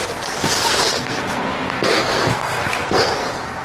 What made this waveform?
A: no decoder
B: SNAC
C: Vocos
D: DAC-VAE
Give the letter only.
B